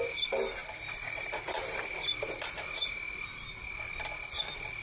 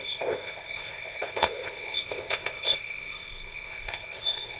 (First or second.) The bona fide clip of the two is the first